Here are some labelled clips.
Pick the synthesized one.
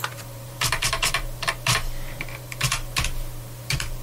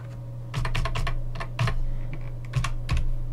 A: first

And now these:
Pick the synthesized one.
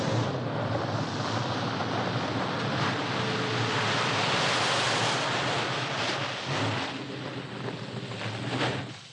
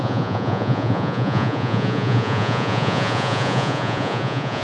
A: second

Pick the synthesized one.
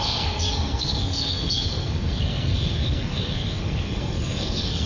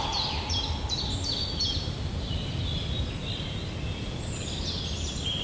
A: first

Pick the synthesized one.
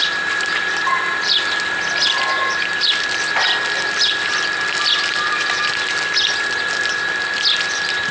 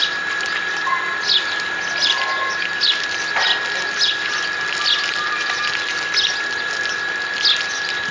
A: first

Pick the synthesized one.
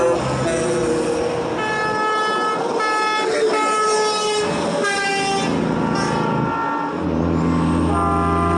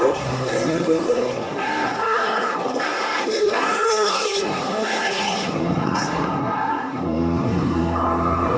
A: second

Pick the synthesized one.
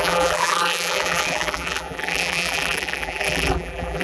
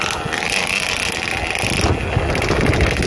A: first